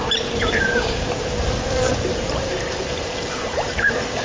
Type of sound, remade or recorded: remade